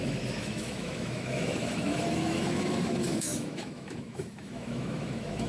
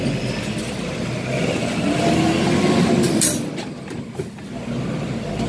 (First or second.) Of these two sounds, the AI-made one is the first